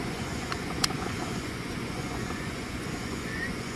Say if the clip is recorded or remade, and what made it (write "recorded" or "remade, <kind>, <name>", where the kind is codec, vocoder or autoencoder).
remade, vocoder, Vocos